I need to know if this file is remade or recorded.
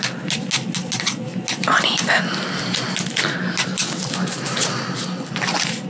recorded